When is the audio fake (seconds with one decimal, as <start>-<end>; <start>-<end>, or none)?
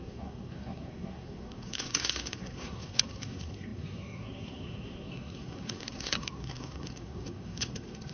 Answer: 0.0-8.1